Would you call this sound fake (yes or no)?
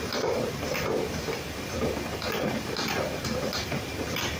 yes